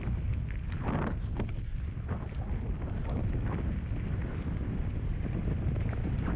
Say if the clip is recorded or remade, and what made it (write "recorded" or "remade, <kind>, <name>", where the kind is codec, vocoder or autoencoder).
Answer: recorded